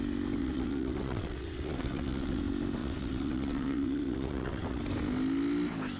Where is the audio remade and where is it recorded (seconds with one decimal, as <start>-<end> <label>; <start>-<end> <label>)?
0.0-0.4 recorded; 0.4-2.4 remade; 2.4-2.8 recorded; 2.8-4.8 remade; 4.8-6.0 recorded

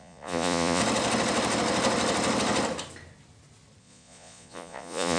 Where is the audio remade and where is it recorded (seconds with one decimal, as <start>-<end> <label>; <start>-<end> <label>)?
0.0-0.8 remade; 0.8-3.8 recorded; 3.8-5.2 remade

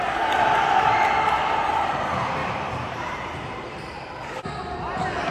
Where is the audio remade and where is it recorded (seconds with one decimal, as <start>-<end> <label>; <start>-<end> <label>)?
0.0-2.4 recorded; 2.4-4.1 remade; 4.1-5.3 recorded